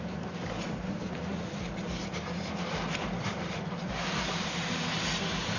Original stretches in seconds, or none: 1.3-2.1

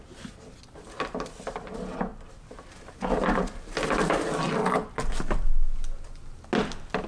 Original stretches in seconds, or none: 0.0-7.1

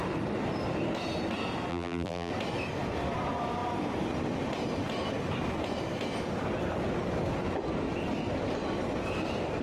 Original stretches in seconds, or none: 0.0-1.7; 2.3-9.6

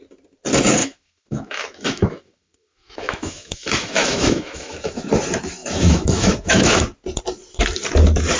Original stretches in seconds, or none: 0.0-0.8; 5.1-5.6; 6.8-8.4

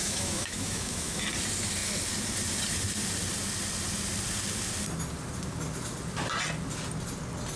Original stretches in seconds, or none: 1.2-7.6

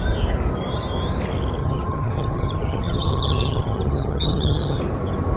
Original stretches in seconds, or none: 0.0-1.6; 4.8-5.4

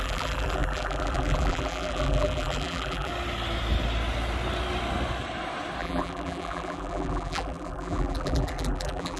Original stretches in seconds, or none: 3.1-5.8